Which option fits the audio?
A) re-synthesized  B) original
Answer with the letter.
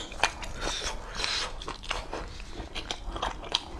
B